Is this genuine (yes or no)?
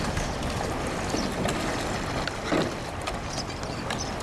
yes